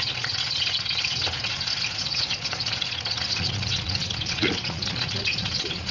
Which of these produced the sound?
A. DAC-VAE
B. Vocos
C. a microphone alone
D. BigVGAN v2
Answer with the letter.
B